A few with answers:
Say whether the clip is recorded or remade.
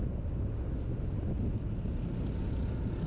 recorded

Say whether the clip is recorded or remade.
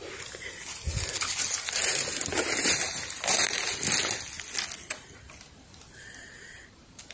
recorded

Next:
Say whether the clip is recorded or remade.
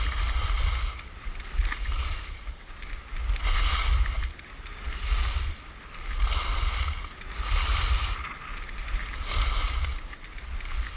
recorded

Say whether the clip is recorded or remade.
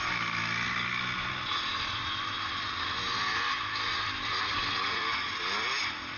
recorded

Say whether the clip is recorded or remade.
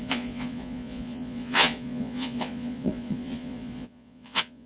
remade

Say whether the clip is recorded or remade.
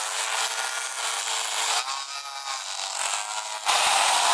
recorded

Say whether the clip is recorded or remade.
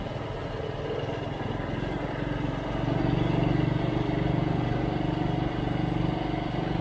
recorded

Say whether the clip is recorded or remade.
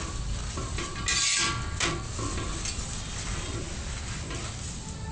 recorded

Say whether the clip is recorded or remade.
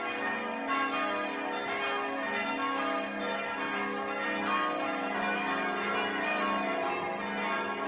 recorded